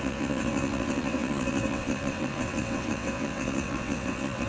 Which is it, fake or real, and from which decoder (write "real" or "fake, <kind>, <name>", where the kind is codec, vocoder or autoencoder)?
fake, vocoder, WaveNeXt